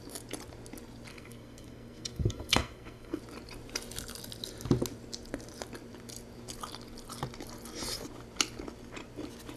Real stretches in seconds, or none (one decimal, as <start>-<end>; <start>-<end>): 0.0-1.1; 3.2-9.6